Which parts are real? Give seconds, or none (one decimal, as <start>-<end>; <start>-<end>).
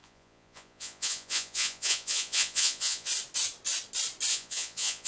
3.1-4.3